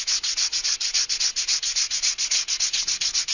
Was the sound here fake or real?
real